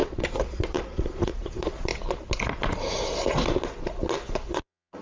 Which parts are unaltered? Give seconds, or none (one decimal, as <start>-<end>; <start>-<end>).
1.9-4.4